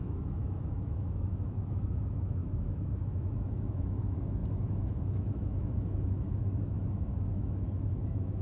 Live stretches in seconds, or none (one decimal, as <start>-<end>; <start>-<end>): none